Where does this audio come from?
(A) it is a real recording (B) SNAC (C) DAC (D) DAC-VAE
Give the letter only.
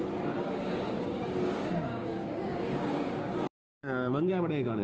C